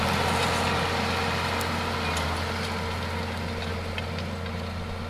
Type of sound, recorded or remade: recorded